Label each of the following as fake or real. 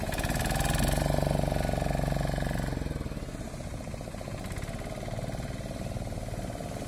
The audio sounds real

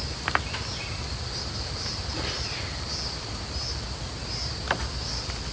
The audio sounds real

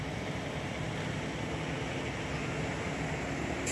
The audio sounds real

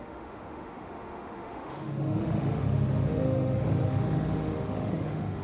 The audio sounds fake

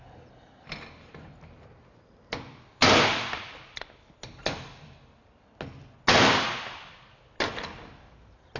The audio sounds real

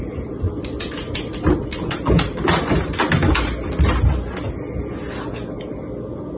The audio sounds real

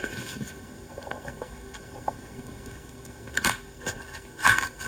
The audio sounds fake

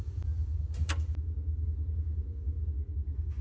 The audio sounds real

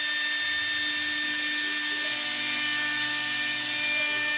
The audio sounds real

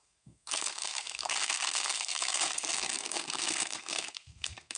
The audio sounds fake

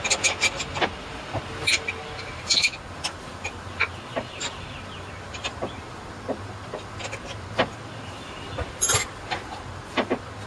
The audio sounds real